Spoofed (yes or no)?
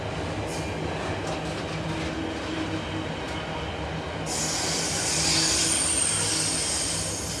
no